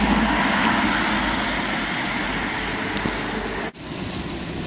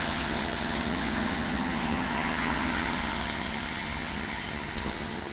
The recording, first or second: first